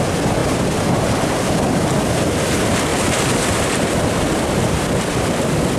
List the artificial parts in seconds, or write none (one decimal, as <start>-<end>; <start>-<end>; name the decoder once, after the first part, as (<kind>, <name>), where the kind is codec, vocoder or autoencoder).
0.4-1.4 (vocoder, BigVGAN v2)